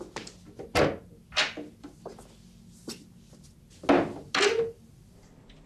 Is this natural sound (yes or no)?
yes